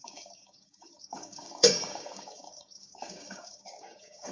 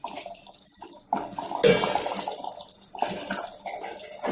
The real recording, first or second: second